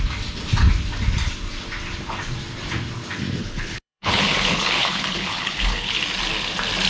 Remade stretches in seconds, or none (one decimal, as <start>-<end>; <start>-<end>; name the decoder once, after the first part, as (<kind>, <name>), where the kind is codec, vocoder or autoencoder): 3.4-6.0 (codec, HILCodec)